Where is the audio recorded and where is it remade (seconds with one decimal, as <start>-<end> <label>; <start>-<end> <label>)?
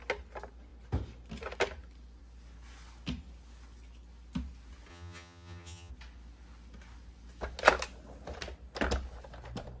0.0-4.9 recorded; 4.9-5.9 remade; 5.9-9.8 recorded